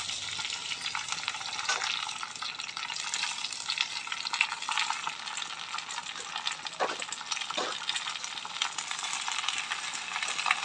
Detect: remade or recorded recorded